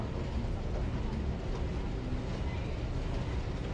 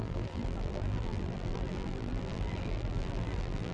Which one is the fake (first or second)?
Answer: second